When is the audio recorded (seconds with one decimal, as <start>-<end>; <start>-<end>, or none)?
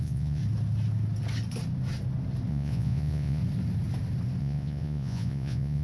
0.4-2.5; 3.4-4.4